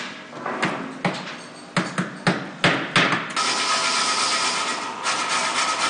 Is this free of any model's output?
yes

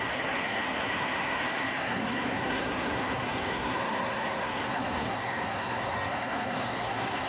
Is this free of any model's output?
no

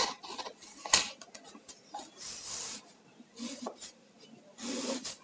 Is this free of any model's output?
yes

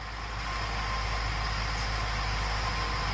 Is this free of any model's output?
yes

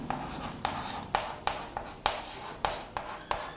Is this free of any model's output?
yes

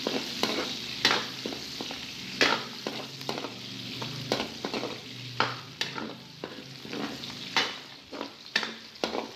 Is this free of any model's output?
yes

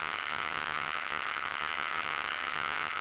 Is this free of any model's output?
no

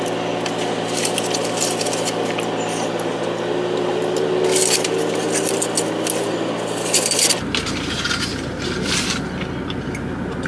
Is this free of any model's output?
yes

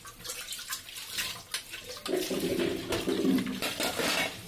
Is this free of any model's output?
yes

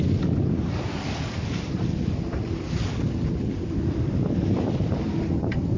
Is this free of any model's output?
yes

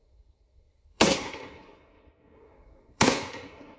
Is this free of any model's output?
no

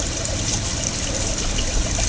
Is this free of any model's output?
yes